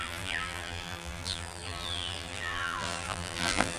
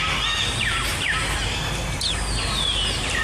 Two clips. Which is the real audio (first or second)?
second